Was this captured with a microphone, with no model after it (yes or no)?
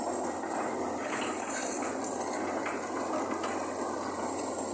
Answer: yes